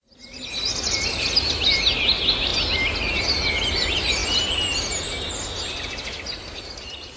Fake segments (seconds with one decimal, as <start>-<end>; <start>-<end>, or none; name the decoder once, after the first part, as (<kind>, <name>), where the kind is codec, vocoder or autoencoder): none